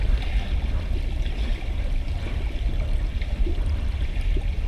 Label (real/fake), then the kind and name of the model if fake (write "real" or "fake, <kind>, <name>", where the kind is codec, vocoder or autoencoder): real